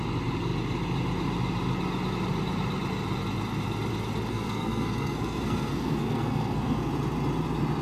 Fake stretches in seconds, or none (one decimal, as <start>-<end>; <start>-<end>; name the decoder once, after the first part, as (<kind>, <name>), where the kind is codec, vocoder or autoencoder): 4.3-6.9 (codec, SNAC)

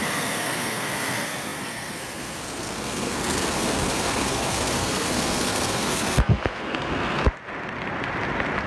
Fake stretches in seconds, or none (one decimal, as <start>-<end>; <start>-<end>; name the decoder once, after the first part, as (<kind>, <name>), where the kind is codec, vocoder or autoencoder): 0.0-7.2 (codec, SNAC)

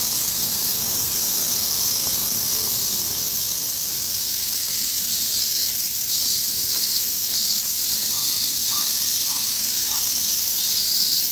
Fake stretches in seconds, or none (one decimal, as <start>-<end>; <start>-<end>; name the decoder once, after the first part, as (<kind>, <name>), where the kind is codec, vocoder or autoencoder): 0.0-11.3 (codec, SNAC)

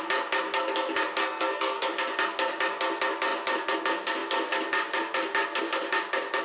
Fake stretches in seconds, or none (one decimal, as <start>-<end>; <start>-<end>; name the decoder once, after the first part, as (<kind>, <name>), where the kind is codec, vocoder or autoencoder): 1.2-1.9 (codec, SNAC)

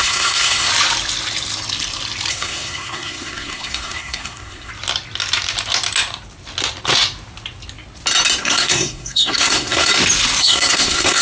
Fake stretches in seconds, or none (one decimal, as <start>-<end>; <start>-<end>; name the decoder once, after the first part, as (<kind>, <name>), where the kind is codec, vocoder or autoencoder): 0.0-0.7 (codec, SNAC); 2.3-4.7; 8.4-9.9; 10.4-11.2

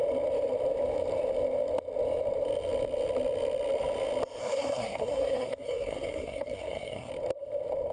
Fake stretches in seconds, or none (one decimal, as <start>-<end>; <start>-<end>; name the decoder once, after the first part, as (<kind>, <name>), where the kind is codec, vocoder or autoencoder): 4.4-7.1 (codec, SNAC)

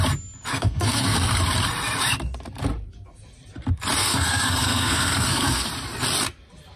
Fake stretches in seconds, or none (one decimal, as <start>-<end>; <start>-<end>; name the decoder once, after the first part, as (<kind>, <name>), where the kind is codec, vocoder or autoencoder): 0.5-1.4 (codec, SNAC); 4.0-5.7

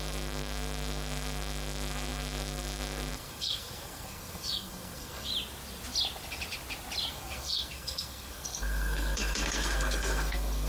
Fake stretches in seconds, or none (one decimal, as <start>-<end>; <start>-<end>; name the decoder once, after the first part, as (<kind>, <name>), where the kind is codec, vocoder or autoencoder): 0.0-5.3 (codec, SNAC); 7.1-10.7